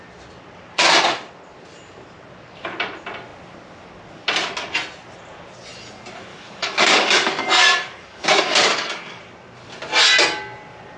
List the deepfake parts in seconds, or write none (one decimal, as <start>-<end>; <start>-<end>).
6.3-9.2